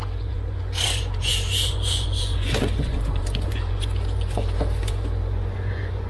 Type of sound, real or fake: fake